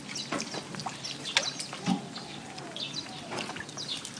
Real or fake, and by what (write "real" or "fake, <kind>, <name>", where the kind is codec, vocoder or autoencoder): real